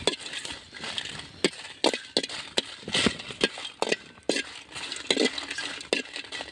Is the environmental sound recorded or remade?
recorded